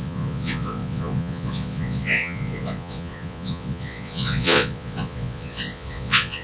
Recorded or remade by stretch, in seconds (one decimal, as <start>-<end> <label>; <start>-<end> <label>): 0.0-6.4 remade

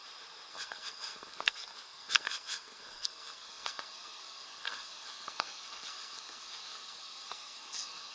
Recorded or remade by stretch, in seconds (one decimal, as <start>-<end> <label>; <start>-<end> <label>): 0.0-0.5 recorded; 0.5-8.1 remade

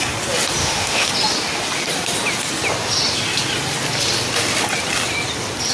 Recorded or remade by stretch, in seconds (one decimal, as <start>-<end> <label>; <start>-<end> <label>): 0.0-0.6 recorded; 0.6-1.1 remade; 1.1-5.7 recorded

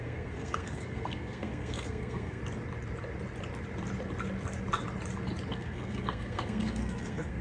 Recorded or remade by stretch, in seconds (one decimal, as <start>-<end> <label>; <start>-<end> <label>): 0.0-2.4 remade; 2.4-5.5 recorded; 5.5-7.4 remade

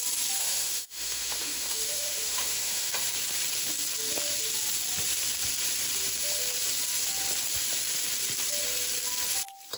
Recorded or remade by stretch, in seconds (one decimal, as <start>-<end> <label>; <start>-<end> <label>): 0.0-0.4 recorded; 0.4-2.9 remade; 2.9-9.8 recorded